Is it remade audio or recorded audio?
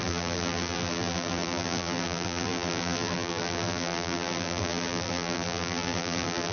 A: remade